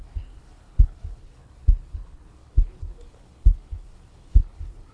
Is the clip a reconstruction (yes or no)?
yes